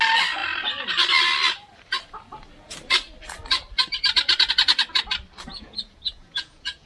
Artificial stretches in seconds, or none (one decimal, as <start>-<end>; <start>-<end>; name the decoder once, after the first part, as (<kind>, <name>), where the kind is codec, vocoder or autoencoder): 5.5-6.9 (vocoder, Vocos)